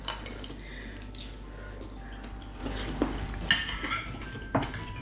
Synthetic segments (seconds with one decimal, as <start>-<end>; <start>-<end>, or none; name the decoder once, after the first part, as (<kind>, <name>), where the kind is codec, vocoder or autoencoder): none